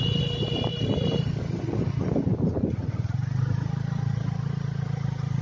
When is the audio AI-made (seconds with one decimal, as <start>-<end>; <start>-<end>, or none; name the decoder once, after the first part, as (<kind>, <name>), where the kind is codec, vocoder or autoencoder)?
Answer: none